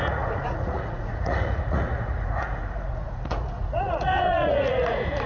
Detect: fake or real fake